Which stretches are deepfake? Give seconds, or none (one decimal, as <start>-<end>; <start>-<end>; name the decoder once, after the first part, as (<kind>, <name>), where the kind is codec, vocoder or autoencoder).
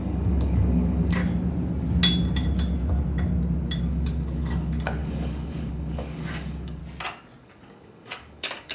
0.0-1.2 (codec, DAC); 3.8-6.8; 7.4-8.7